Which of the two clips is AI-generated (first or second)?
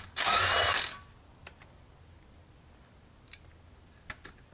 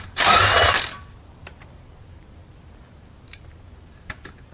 second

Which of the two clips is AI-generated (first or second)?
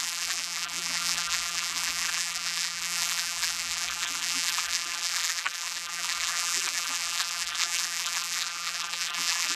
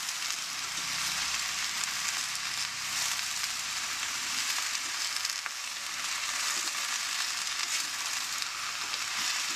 first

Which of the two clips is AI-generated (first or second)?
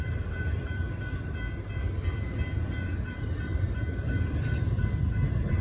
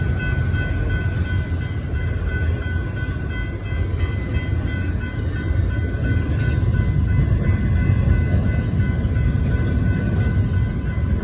first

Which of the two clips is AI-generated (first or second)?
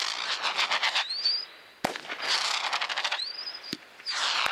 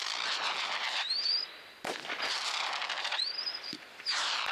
second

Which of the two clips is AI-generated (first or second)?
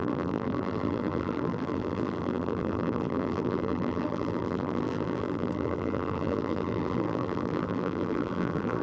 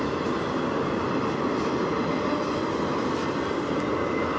first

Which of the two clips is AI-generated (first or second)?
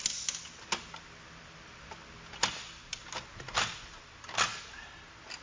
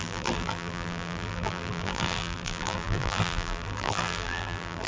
second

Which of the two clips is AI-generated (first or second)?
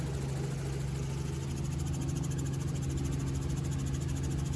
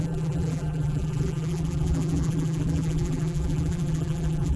second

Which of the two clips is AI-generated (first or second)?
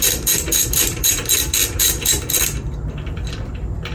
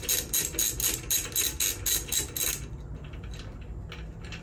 first